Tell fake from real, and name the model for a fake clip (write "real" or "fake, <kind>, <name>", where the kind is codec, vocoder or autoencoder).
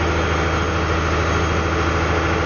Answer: real